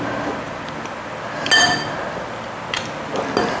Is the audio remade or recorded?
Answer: recorded